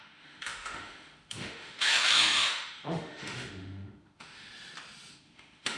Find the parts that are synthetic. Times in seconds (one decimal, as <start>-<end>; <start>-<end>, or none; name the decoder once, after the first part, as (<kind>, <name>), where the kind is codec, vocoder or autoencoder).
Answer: 0.0-4.5 (autoencoder, DAC-VAE); 5.1-5.8